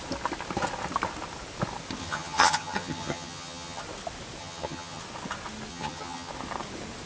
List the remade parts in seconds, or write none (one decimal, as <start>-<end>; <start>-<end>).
2.0-3.8; 4.4-5.0; 5.7-6.3